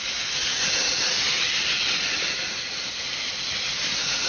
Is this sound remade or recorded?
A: recorded